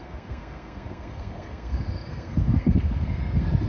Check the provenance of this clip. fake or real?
fake